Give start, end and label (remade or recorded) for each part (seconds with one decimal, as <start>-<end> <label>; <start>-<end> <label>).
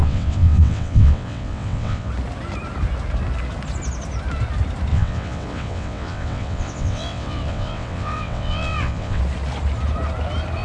0.0-2.1 remade; 2.1-4.9 recorded; 4.9-9.2 remade; 9.2-10.6 recorded